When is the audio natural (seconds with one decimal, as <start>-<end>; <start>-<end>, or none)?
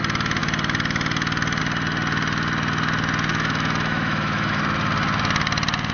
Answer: 0.0-3.3; 4.6-5.9